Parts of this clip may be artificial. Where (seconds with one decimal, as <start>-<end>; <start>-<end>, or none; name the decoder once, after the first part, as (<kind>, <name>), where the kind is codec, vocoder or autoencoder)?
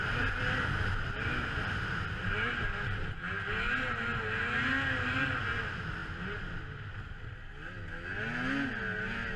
none